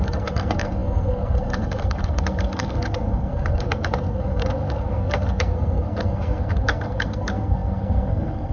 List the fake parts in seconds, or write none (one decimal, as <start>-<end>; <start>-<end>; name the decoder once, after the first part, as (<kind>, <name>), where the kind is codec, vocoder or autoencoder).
0.0-8.5 (codec, SNAC)